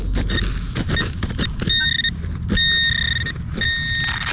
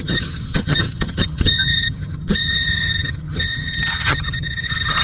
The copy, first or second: second